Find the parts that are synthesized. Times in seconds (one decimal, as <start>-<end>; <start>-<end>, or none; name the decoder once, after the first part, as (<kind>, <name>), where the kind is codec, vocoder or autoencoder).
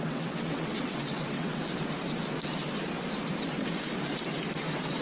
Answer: 0.0-1.6 (vocoder, WaveNeXt); 4.6-5.0